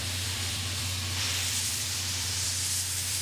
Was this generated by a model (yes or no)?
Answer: yes